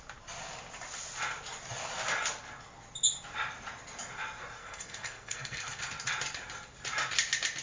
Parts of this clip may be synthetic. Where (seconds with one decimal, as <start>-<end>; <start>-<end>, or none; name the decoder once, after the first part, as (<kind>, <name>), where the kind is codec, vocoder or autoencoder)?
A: 4.6-5.8 (codec, SNAC)